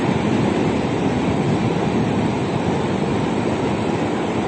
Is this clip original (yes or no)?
yes